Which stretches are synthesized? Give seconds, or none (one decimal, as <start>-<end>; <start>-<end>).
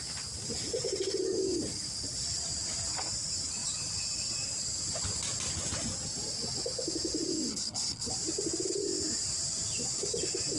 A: 7.5-8.1